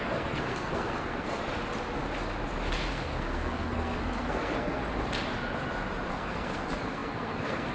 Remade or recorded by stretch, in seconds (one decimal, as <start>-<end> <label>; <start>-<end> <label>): 0.0-1.4 remade; 1.4-2.9 recorded; 2.9-4.8 remade; 4.8-6.1 recorded; 6.1-7.7 remade

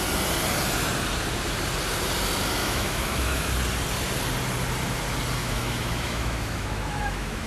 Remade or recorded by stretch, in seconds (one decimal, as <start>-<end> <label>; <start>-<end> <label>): 0.0-2.6 recorded; 2.6-3.5 remade; 3.5-5.4 recorded; 5.4-7.5 remade

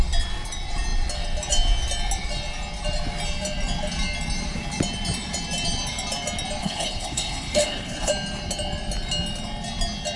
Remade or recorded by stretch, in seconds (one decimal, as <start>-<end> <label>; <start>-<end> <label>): 0.0-6.6 recorded; 6.6-8.1 remade; 8.1-10.2 recorded

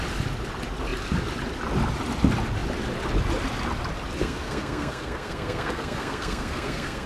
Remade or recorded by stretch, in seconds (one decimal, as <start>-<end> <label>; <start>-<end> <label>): 0.0-4.2 recorded; 4.2-7.1 remade